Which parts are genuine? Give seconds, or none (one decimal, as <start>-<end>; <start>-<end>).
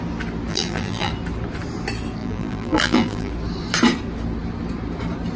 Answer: 0.0-0.5; 1.1-2.2; 3.3-5.4